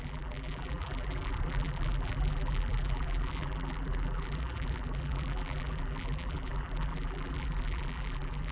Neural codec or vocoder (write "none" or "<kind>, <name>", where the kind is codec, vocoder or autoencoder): vocoder, BigVGAN v2